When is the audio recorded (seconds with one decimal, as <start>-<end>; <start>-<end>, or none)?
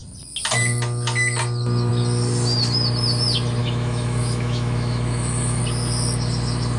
0.0-3.6; 5.6-6.8